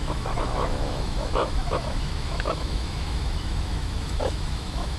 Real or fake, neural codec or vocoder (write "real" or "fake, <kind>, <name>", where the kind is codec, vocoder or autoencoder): fake, autoencoder, DAC-VAE